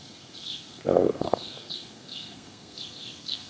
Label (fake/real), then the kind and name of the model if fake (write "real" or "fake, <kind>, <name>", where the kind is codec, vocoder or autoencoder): fake, codec, SNAC